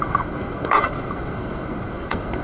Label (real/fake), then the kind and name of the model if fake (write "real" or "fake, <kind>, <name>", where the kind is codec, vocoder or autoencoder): fake, codec, SNAC